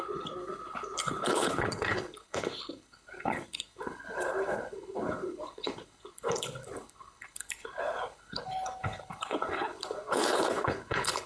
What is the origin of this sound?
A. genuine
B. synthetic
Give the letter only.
B